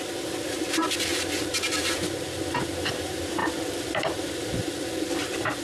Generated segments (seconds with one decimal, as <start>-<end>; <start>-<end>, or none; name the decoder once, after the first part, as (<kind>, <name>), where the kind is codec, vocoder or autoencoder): none